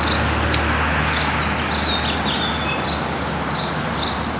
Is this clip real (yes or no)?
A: yes